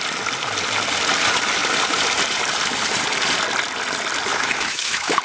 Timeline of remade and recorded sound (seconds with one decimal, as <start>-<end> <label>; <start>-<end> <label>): 0.0-4.3 recorded; 4.3-5.2 remade